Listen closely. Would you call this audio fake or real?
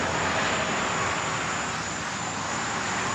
real